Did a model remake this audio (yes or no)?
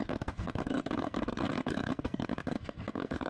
yes